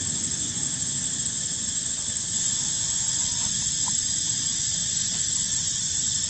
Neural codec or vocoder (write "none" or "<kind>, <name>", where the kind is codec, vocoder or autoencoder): vocoder, Vocos